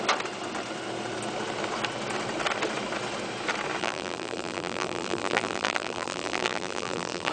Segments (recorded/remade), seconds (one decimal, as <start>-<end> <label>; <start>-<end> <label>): 0.0-3.8 recorded; 3.8-7.3 remade